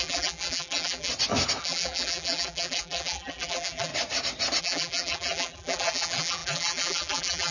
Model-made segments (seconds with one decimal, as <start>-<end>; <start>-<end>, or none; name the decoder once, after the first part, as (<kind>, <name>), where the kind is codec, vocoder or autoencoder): 0.0-1.1 (vocoder, BigVGAN v2); 1.6-3.9; 4.6-7.5